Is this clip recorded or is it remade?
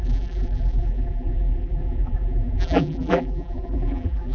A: remade